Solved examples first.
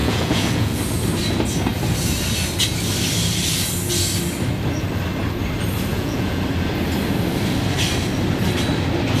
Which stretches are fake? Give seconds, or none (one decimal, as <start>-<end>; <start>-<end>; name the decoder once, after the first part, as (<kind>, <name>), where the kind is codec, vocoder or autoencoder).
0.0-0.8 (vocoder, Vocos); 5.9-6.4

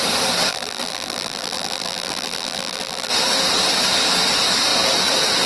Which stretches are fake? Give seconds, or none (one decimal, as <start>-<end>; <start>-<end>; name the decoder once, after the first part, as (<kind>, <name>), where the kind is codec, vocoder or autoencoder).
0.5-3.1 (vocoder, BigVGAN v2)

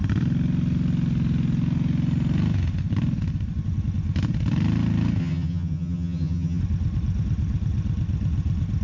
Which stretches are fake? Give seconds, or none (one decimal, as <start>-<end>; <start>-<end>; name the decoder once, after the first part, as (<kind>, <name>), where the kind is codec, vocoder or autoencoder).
5.2-6.6 (vocoder, HiFi-GAN)

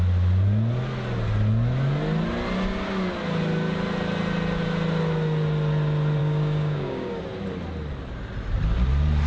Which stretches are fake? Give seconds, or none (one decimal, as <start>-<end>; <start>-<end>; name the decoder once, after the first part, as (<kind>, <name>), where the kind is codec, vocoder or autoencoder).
6.2-7.2 (codec, DAC)

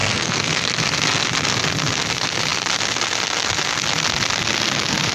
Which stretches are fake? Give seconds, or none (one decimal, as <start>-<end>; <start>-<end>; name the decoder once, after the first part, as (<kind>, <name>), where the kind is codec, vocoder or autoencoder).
0.0-0.6 (codec, SNAC)

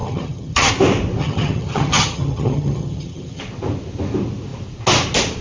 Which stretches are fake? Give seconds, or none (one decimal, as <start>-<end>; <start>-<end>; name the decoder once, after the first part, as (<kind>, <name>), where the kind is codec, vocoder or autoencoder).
0.0-0.7 (vocoder, HiFi-GAN); 1.2-3.4